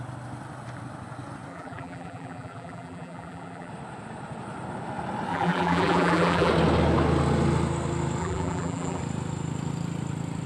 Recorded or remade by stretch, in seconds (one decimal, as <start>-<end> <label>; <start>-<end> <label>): 0.0-1.5 recorded; 1.5-3.7 remade; 3.7-5.3 recorded; 5.3-6.5 remade; 6.5-8.2 recorded; 8.2-9.0 remade; 9.0-10.5 recorded